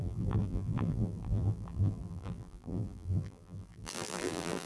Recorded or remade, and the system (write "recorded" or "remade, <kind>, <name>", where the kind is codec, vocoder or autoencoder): remade, vocoder, BigVGAN v2